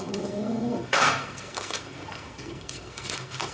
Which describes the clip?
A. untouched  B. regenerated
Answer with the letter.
B